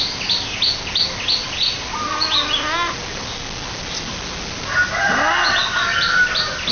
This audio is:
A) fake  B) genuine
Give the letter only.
B